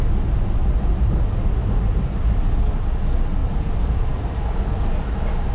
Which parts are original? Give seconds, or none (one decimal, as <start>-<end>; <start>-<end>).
0.0-0.6; 1.1-3.4; 4.4-5.5